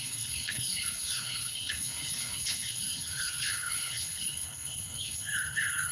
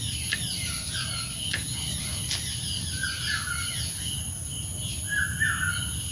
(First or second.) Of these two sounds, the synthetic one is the first